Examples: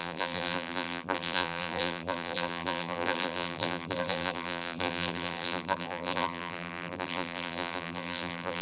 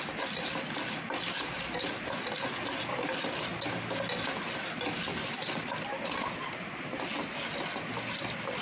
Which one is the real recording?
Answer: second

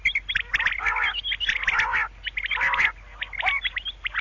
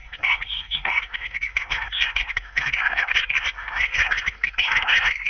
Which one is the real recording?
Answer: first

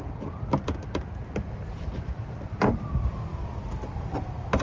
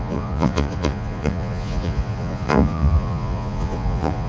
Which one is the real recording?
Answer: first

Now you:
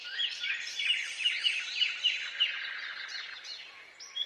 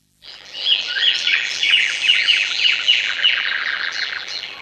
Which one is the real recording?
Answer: first